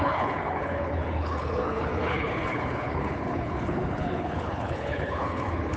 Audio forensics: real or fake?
fake